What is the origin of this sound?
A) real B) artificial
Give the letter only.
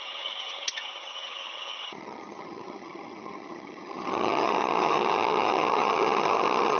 B